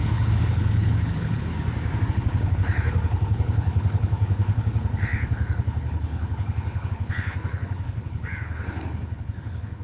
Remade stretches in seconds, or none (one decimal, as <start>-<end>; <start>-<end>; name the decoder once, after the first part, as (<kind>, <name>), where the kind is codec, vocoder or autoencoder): 0.0-1.5 (codec, HILCodec); 2.1-9.8